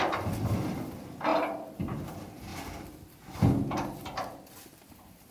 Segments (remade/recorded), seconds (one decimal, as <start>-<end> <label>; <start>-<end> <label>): 0.0-5.3 recorded

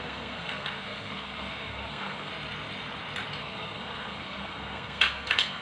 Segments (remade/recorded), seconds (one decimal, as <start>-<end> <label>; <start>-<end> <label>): 0.0-2.3 remade; 2.3-3.4 recorded; 3.4-5.6 remade

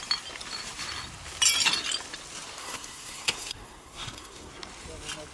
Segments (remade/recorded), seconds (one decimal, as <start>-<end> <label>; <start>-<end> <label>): 0.0-2.6 recorded; 2.6-4.5 remade; 4.5-5.3 recorded

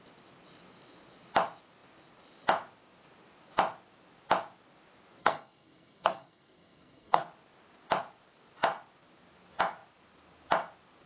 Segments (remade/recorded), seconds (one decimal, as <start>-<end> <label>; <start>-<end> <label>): 0.0-5.2 recorded; 5.2-7.3 remade; 7.3-11.1 recorded

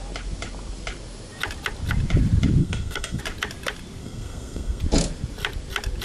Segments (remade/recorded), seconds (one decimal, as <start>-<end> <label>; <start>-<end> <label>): 0.0-2.6 recorded; 2.6-3.2 remade; 3.2-4.0 recorded; 4.0-4.8 remade; 4.8-6.0 recorded

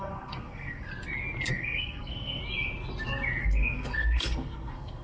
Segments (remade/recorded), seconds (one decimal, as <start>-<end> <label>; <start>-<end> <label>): 0.0-0.9 remade; 0.9-1.5 recorded; 1.5-2.4 remade; 2.4-3.4 recorded; 3.4-5.0 remade

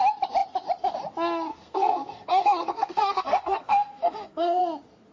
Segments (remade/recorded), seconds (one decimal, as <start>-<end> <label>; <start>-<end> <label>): 0.0-1.5 recorded; 1.5-4.6 remade; 4.6-5.1 recorded

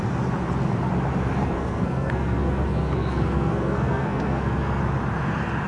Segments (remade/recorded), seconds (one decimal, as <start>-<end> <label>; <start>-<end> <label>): 0.0-1.4 recorded; 1.4-4.8 remade; 4.8-5.7 recorded